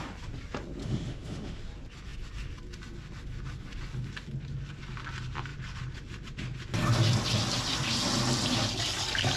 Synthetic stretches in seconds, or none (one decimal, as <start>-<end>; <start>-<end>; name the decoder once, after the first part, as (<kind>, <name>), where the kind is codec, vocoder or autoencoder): 0.8-1.6 (autoencoder, DAC-VAE)